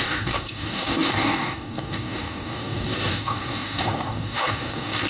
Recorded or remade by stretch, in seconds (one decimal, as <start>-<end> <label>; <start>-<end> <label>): 0.0-5.1 remade